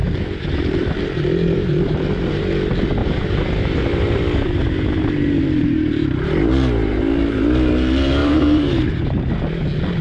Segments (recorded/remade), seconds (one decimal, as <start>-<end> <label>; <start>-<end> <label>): 0.0-2.4 remade; 2.4-3.0 recorded; 3.0-7.7 remade; 7.7-8.2 recorded; 8.2-9.3 remade; 9.3-10.0 recorded